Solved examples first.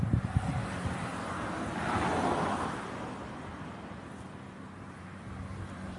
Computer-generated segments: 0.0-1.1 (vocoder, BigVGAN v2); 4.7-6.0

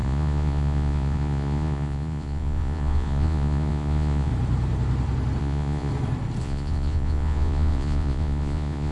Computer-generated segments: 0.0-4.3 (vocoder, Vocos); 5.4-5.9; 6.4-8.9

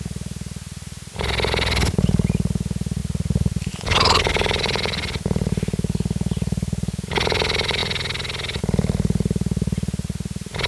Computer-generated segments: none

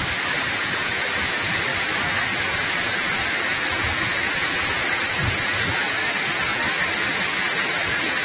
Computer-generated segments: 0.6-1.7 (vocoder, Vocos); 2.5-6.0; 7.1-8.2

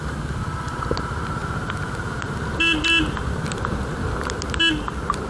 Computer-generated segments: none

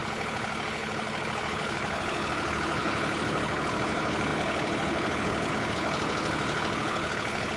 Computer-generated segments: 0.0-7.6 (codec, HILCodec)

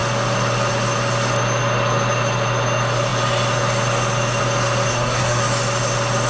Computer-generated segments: 4.9-5.4 (codec, SNAC)

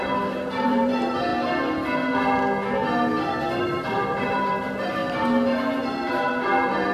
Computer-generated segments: 0.0-1.3 (vocoder, BigVGAN v2); 3.6-5.0; 6.1-6.9